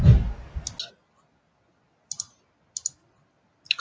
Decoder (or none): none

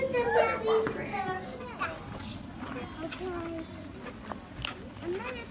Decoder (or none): none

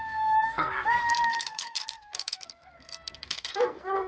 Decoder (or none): codec, SNAC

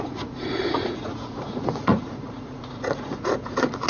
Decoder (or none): vocoder, Vocos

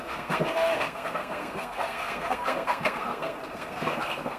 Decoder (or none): codec, SNAC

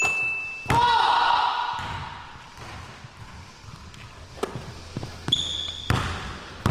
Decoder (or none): none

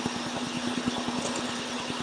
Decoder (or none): none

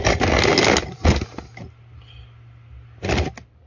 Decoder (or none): none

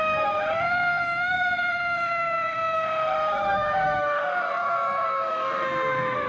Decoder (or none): autoencoder, DAC-VAE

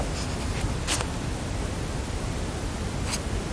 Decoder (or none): none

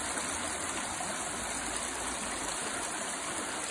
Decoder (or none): none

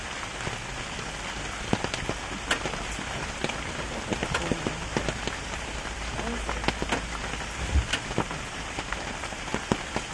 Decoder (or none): none